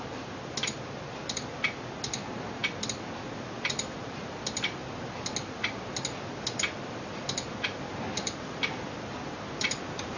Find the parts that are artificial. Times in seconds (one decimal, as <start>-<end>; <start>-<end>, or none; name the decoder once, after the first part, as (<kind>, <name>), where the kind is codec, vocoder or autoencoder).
none